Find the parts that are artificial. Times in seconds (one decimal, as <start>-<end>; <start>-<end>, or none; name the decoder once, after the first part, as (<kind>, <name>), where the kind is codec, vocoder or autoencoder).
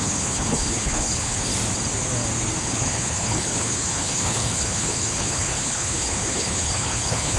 0.0-1.5 (codec, HILCodec); 2.6-7.4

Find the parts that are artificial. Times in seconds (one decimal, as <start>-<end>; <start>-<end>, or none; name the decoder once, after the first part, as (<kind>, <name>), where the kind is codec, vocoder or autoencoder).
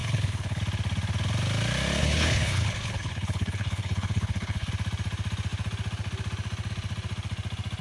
0.0-0.6 (codec, HILCodec); 2.0-4.7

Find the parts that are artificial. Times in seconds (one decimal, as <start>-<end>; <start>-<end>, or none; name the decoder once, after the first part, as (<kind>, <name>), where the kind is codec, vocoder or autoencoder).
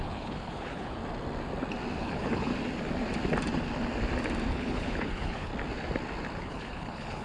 0.0-1.0 (codec, HILCodec); 2.0-2.5; 4.5-5.5; 6.4-7.2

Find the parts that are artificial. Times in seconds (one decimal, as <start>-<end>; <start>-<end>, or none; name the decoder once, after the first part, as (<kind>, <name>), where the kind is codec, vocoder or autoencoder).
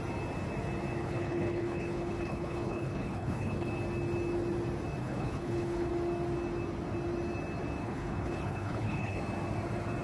1.0-3.7 (codec, HILCodec); 5.0-5.9; 7.8-9.2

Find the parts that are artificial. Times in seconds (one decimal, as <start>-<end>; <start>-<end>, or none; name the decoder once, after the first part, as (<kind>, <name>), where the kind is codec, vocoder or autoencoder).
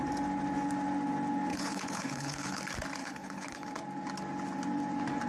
1.5-2.6 (codec, HILCodec); 3.0-3.7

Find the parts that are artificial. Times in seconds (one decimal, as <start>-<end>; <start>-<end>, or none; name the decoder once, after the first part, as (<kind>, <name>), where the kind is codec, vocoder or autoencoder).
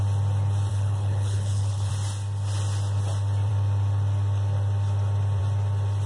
0.7-1.9 (codec, HILCodec)